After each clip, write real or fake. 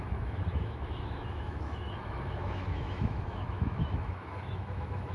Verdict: fake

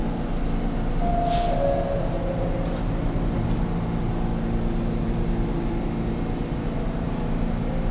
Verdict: real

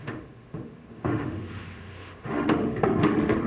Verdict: fake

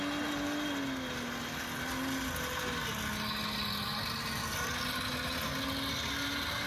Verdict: real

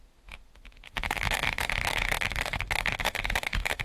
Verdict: fake